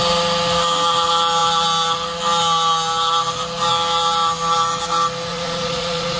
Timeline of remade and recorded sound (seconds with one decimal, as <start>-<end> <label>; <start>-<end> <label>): 0.0-5.3 recorded; 5.3-6.2 remade